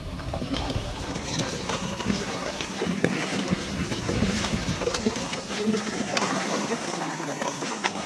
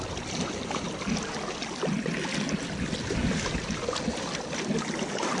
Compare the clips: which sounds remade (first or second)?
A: first